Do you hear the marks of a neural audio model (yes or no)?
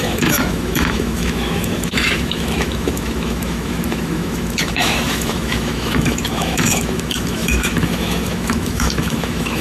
yes